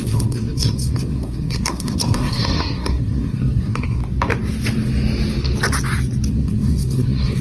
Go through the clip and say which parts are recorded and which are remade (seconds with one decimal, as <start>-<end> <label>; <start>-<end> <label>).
0.0-4.0 remade; 4.0-6.3 recorded; 6.3-7.4 remade